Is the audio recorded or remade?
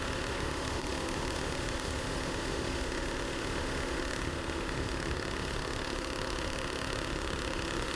remade